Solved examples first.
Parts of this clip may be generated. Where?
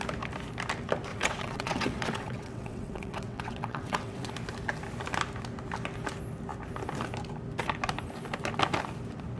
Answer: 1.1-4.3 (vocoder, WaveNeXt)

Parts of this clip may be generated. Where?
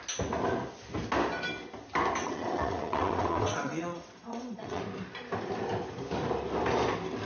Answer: 2.2-4.8 (vocoder, WaveNeXt)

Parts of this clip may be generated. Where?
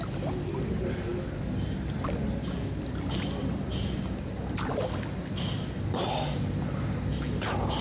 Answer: none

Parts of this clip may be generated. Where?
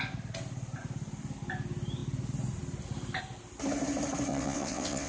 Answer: 4.3-5.1 (vocoder, WaveNeXt)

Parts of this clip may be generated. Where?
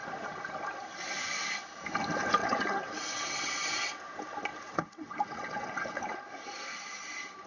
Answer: 2.4-4.0 (vocoder, WaveNeXt); 4.5-6.0